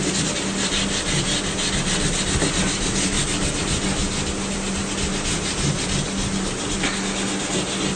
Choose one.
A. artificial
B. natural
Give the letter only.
B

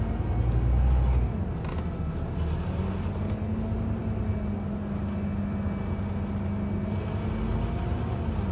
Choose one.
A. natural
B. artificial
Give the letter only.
A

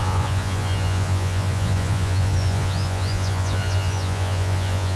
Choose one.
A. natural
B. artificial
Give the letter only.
B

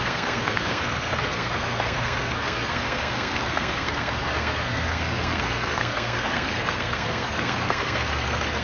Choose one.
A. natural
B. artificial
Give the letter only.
B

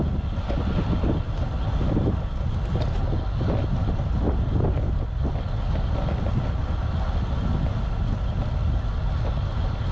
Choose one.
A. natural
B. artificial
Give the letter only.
A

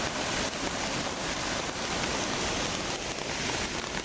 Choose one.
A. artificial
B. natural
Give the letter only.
B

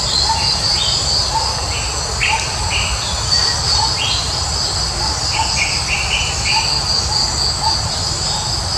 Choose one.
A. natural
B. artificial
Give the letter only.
A